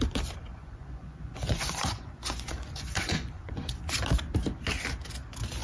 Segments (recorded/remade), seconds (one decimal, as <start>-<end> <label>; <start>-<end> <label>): 0.0-0.5 recorded; 0.5-3.9 remade; 3.9-5.6 recorded